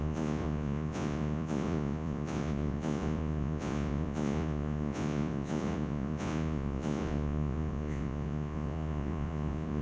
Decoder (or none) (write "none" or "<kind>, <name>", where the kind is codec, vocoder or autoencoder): vocoder, Vocos